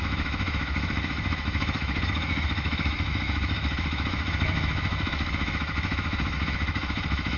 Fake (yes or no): yes